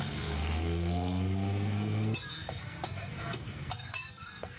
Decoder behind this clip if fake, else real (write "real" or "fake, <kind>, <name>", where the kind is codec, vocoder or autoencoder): fake, codec, SNAC